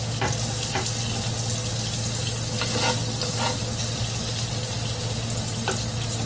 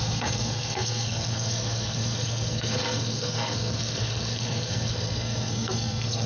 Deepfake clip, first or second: second